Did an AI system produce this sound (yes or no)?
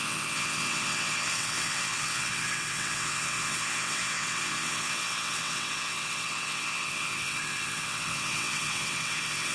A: yes